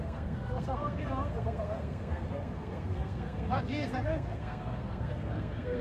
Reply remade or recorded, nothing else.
remade